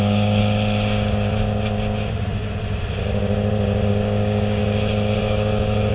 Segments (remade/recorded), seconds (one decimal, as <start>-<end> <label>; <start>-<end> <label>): 0.0-0.4 remade; 0.4-3.9 recorded; 3.9-4.6 remade; 4.6-5.2 recorded; 5.2-5.9 remade